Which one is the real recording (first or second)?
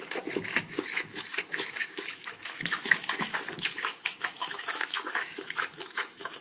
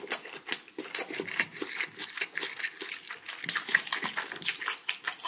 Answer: second